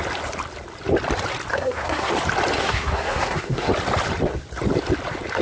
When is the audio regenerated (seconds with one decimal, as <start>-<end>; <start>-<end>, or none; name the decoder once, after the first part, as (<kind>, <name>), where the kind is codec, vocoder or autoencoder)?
1.5-2.1 (codec, SNAC); 2.6-3.7